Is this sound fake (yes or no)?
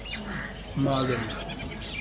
no